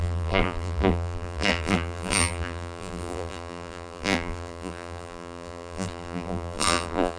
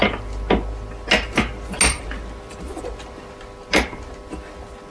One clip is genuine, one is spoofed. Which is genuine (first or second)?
second